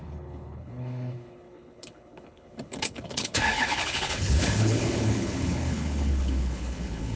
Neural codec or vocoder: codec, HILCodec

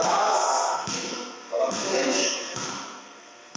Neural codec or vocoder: codec, SNAC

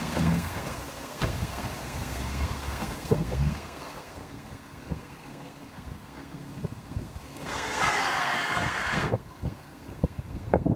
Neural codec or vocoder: codec, SNAC